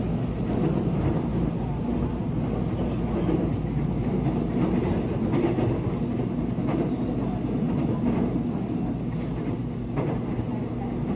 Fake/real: real